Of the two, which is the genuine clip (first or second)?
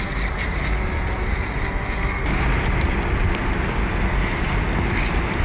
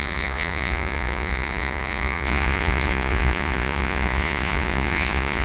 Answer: first